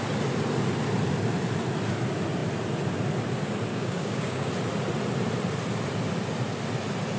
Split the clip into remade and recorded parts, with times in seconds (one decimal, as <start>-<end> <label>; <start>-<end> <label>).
0.0-3.7 recorded; 3.7-4.5 remade; 4.5-7.2 recorded

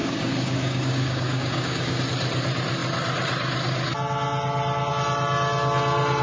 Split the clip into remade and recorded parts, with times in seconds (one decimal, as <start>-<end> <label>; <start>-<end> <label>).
0.0-2.0 remade; 2.0-6.2 recorded

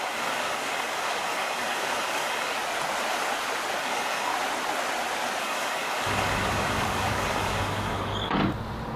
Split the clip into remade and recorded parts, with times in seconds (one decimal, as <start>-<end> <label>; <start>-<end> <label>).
0.0-2.6 remade; 2.6-3.8 recorded; 3.8-4.3 remade; 4.3-5.4 recorded; 5.4-8.4 remade; 8.4-9.0 recorded

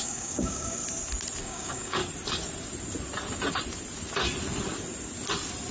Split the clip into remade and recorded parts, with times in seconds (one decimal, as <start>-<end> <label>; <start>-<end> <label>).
0.0-0.8 remade; 0.8-1.4 recorded; 1.4-2.0 remade; 2.0-5.7 recorded

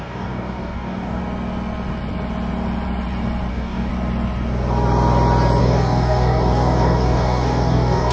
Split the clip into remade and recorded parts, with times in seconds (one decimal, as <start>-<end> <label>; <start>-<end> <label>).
0.0-1.2 remade; 1.2-3.5 recorded; 3.5-3.9 remade; 3.9-5.6 recorded; 5.6-8.1 remade

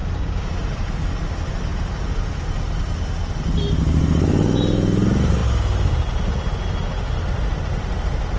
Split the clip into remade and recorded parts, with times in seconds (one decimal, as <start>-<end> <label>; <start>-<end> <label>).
0.0-0.5 remade; 0.5-8.4 recorded